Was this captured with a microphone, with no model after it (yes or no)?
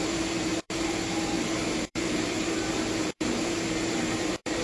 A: no